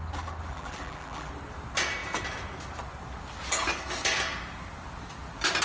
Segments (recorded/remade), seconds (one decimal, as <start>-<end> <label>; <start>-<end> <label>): 0.0-0.5 recorded; 0.5-1.3 remade; 1.3-5.6 recorded